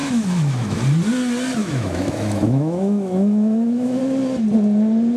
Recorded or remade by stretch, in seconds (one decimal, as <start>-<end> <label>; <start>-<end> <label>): 0.0-0.8 remade; 0.8-1.6 recorded; 1.6-4.0 remade; 4.0-5.2 recorded